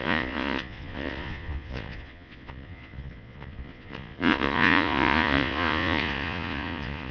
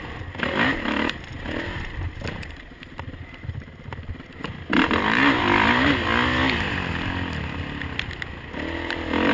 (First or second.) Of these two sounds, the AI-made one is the first